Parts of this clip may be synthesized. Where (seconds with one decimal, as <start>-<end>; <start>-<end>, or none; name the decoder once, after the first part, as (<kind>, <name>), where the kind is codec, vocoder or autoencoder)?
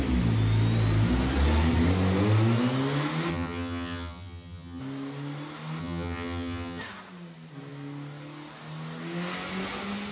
3.3-4.8 (vocoder, HiFi-GAN); 5.8-6.8